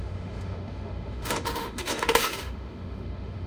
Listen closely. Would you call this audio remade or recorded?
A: remade